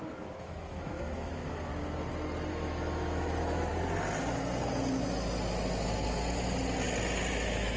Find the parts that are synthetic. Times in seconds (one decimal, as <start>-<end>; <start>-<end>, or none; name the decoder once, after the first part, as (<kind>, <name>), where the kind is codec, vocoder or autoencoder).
0.0-1.7 (autoencoder, DAC-VAE); 2.5-3.7; 7.3-7.8